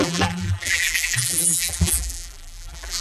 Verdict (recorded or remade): remade